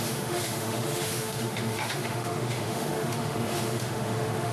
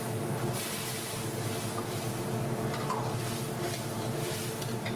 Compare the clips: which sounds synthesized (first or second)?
first